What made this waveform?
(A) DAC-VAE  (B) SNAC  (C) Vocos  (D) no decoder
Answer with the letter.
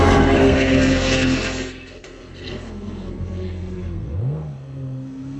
B